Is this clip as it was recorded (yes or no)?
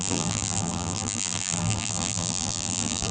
no